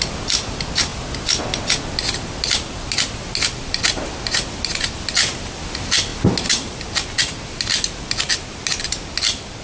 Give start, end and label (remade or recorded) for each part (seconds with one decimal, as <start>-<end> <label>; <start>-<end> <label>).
0.0-9.6 recorded